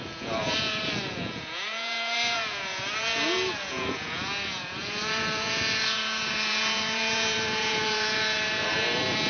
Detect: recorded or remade remade